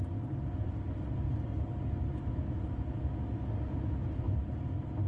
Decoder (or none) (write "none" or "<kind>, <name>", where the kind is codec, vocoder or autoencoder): none